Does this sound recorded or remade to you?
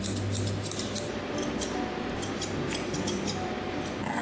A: recorded